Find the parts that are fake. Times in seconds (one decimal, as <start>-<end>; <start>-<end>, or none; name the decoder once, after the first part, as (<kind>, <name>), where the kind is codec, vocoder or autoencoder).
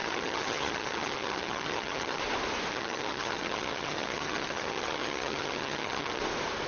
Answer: 0.0-2.2 (vocoder, HiFi-GAN); 2.7-6.2